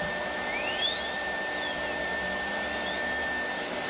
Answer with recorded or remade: recorded